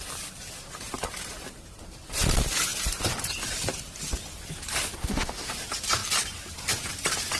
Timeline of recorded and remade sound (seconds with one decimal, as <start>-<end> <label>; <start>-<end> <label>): 0.0-5.0 recorded; 5.0-5.5 remade; 5.5-7.4 recorded